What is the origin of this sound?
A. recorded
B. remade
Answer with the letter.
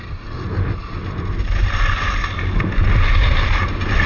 A